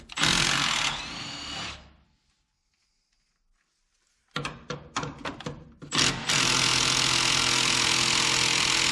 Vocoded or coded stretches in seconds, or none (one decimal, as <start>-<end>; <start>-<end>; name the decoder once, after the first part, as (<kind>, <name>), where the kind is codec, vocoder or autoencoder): none

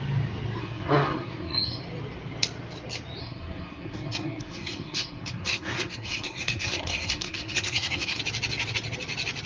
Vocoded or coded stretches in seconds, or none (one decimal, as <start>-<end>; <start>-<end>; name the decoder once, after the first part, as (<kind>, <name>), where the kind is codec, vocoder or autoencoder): 0.6-1.8 (codec, SNAC); 3.2-8.2

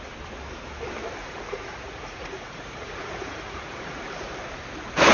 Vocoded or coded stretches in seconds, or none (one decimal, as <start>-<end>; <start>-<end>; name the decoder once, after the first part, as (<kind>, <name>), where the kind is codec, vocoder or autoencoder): 1.2-4.3 (vocoder, Vocos)

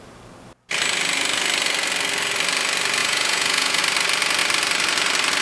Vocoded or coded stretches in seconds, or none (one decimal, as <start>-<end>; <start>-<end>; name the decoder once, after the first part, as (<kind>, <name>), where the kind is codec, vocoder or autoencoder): 3.0-3.8 (vocoder, Vocos)

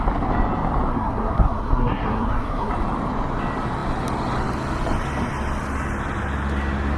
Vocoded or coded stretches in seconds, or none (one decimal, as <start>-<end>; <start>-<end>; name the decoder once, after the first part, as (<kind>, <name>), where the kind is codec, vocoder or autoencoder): 0.9-2.7 (codec, SNAC)